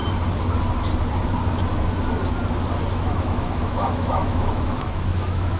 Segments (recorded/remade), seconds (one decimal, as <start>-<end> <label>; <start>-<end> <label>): 0.0-2.9 recorded; 2.9-5.6 remade